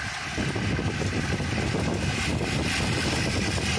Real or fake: real